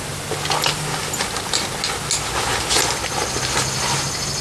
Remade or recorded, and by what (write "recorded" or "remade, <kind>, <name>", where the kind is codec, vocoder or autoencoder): recorded